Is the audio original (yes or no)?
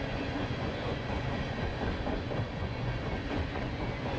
no